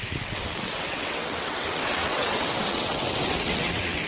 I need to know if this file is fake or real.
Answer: fake